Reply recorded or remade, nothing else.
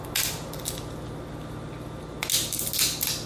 recorded